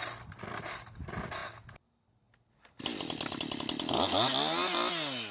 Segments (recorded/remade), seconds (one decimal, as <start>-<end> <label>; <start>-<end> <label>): 0.0-5.3 recorded